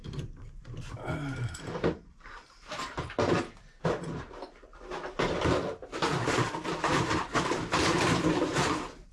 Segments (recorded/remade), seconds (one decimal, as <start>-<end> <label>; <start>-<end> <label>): 0.0-3.4 remade; 3.4-4.7 recorded; 4.7-9.1 remade